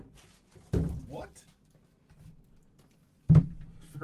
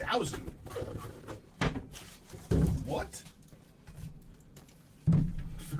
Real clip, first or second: first